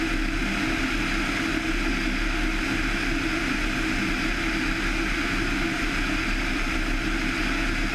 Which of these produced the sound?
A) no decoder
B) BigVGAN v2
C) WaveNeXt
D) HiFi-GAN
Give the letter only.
A